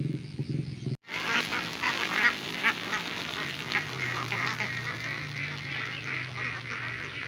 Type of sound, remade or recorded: remade